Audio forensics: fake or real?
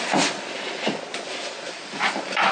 real